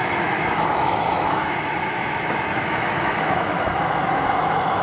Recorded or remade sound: remade